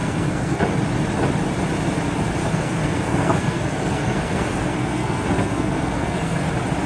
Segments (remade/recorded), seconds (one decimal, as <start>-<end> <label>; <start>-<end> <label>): 0.0-0.7 remade; 0.7-2.4 recorded; 2.4-6.5 remade; 6.5-6.9 recorded